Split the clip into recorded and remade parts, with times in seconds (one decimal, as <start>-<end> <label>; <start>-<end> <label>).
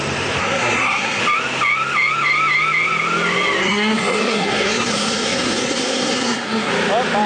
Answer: 0.0-0.4 recorded; 0.4-1.2 remade; 1.2-3.6 recorded; 3.6-6.7 remade; 6.7-7.3 recorded